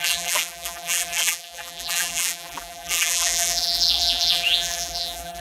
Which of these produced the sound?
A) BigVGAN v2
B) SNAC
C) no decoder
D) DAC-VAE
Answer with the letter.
A